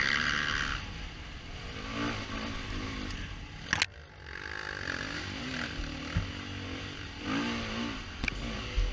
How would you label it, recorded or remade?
recorded